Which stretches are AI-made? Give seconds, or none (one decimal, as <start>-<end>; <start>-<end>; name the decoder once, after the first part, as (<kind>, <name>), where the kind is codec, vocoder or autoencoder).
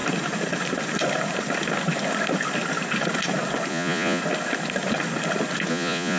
3.7-4.2 (vocoder, Vocos); 5.7-6.2